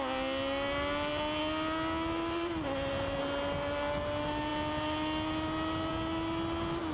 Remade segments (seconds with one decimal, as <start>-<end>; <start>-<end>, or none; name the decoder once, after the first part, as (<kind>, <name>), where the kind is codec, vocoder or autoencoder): none